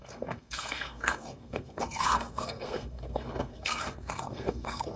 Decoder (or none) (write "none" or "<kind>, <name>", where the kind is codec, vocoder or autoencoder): codec, SNAC